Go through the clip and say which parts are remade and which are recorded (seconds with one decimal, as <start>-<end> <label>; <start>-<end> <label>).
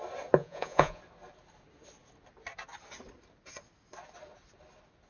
0.0-0.4 recorded; 0.4-1.0 remade; 1.0-5.1 recorded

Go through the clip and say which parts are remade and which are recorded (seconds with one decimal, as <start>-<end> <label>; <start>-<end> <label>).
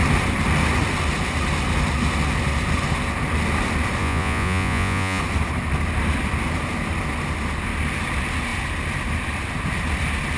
0.0-4.0 recorded; 4.0-5.2 remade; 5.2-10.4 recorded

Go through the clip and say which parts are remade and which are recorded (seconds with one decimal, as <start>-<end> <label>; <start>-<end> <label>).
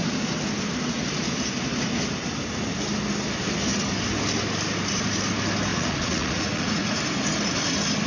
0.0-5.7 recorded; 5.7-7.0 remade; 7.0-8.1 recorded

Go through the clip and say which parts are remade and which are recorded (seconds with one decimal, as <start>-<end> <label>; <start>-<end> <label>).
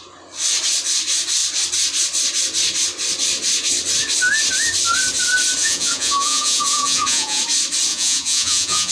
0.0-5.6 recorded; 5.6-7.4 remade; 7.4-7.9 recorded; 7.9-8.9 remade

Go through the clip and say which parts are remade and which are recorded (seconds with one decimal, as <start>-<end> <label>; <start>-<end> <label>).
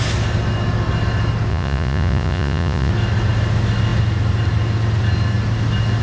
0.0-1.5 recorded; 1.5-2.9 remade; 2.9-6.0 recorded